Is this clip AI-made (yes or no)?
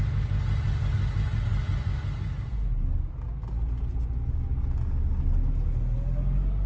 no